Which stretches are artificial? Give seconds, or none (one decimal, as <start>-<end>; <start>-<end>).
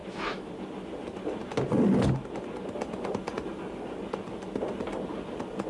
0.0-0.5